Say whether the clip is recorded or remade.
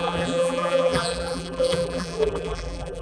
remade